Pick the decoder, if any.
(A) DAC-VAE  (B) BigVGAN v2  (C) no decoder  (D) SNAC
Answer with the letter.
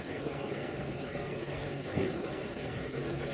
D